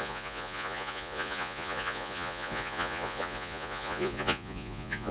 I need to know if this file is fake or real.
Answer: fake